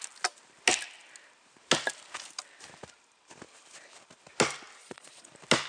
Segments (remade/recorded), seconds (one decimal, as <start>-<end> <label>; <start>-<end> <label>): 0.0-4.8 recorded; 4.8-5.3 remade; 5.3-5.7 recorded